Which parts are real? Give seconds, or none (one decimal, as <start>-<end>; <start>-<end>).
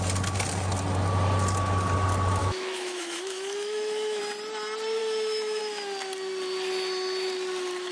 0.0-2.4; 4.2-5.0; 5.6-7.9